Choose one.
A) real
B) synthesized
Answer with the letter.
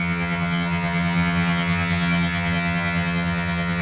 B